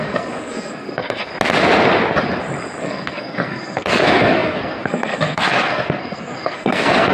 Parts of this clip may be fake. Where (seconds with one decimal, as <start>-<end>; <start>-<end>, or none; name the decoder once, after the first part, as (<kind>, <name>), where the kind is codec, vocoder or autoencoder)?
0.0-1.3 (codec, SNAC); 2.8-7.1